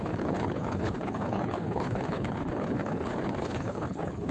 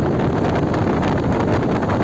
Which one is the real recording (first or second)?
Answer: second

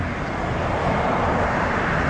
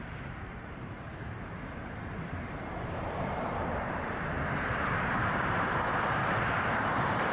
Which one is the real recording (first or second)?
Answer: first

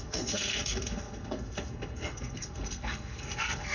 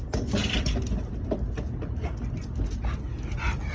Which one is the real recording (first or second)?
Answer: second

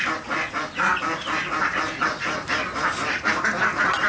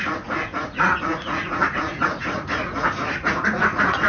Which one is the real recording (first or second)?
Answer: first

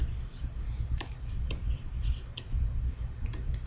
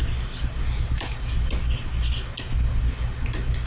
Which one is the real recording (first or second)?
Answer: second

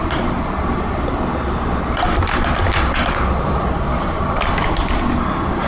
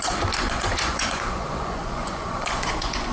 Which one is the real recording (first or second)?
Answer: first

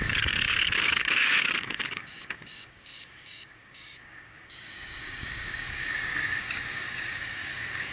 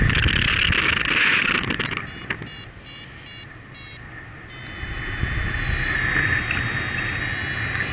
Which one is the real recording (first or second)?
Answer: second